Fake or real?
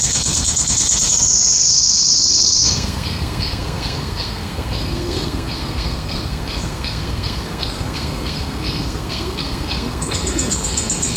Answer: fake